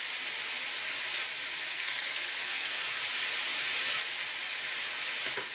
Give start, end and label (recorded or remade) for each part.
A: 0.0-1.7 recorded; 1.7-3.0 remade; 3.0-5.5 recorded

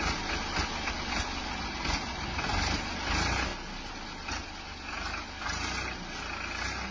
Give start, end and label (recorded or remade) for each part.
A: 0.0-6.9 recorded

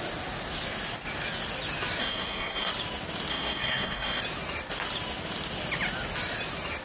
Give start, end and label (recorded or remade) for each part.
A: 0.0-2.0 recorded; 2.0-2.7 remade; 2.7-3.3 recorded; 3.3-4.2 remade; 4.2-6.8 recorded

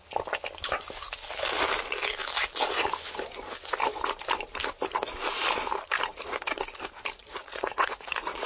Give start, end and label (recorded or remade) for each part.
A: 0.0-7.2 recorded; 7.2-8.5 remade

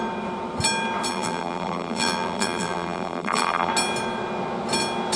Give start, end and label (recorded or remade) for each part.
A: 0.0-1.1 recorded; 1.1-3.7 remade; 3.7-5.2 recorded

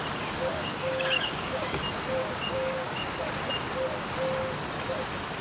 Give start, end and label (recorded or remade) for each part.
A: 0.0-0.5 recorded; 0.5-1.8 remade; 1.8-2.2 recorded; 2.2-3.2 remade; 3.2-5.4 recorded

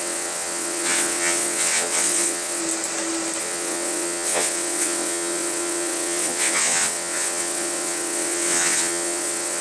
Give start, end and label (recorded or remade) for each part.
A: 0.0-2.6 remade; 2.6-3.4 recorded; 3.4-9.6 remade